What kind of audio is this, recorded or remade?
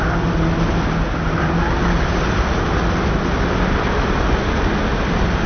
recorded